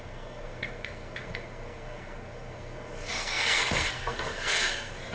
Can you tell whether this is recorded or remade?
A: remade